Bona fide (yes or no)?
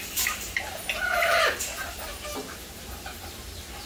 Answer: no